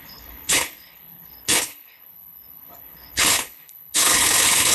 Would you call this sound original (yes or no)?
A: no